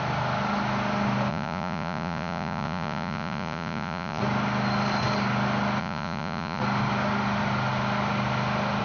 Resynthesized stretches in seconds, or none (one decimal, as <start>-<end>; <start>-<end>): 1.3-4.2; 5.8-6.6